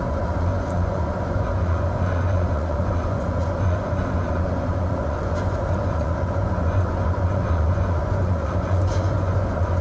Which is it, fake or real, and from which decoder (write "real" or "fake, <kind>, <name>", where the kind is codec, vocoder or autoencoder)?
fake, vocoder, Vocos